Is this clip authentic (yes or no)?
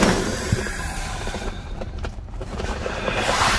no